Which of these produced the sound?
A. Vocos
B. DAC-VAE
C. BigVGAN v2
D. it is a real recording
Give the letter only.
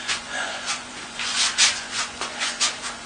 A